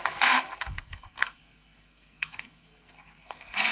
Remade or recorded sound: remade